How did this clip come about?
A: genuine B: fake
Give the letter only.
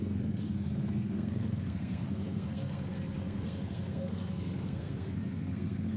B